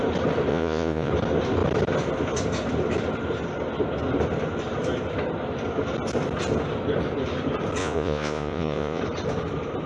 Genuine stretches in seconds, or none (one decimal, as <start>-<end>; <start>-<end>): 0.0-0.5; 1.1-7.8; 9.0-9.9